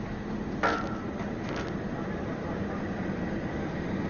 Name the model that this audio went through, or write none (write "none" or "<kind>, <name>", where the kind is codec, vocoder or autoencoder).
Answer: none